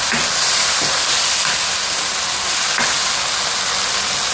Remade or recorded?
recorded